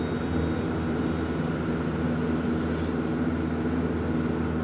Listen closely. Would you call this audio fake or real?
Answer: real